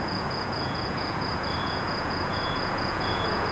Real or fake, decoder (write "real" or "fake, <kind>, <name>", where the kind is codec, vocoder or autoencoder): fake, vocoder, Vocos